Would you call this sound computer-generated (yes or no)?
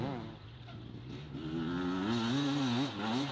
no